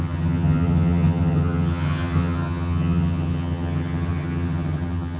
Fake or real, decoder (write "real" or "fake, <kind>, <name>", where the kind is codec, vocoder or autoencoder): fake, vocoder, HiFi-GAN